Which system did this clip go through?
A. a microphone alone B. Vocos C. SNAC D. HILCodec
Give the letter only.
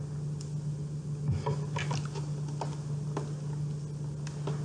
A